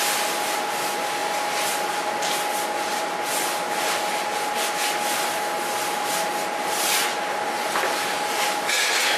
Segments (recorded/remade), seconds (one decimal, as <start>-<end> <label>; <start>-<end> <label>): 0.0-9.2 recorded